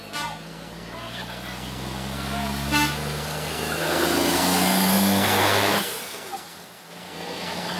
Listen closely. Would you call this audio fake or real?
fake